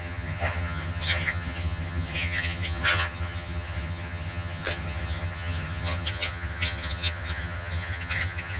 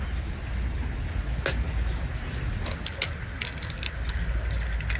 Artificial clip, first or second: first